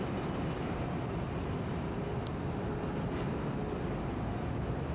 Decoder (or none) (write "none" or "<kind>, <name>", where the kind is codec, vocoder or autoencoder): none